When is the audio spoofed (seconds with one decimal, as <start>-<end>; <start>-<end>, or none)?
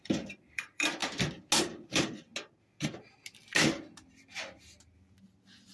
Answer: 0.0-1.0; 1.6-2.3